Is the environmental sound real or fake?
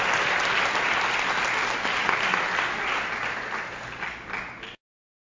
real